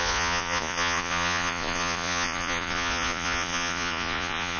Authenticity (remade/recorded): remade